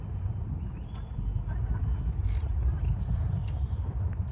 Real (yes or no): yes